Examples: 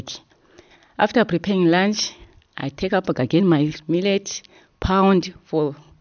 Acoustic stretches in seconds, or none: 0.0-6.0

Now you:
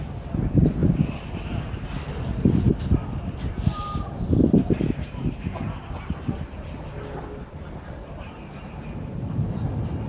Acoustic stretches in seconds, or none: 0.0-10.1

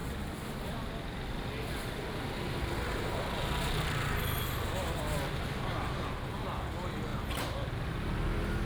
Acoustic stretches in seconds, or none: 0.0-8.7

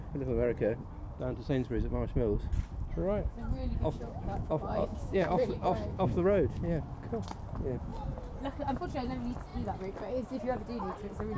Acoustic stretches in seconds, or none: 0.0-3.0; 6.8-11.4

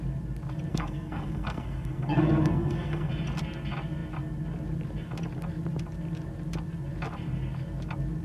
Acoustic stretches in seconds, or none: 0.0-0.7; 3.1-8.2

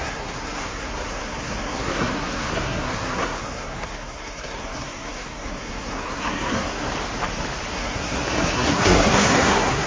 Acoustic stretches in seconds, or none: 6.9-7.7

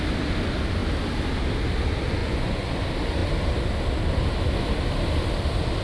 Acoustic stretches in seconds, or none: 0.0-2.2; 2.8-5.8

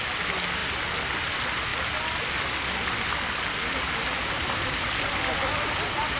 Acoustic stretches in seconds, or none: 0.0-6.2